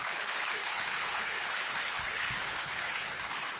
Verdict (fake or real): fake